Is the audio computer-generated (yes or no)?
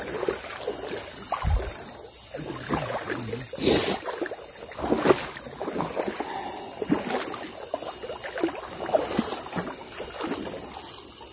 no